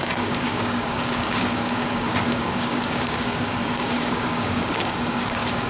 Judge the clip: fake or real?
fake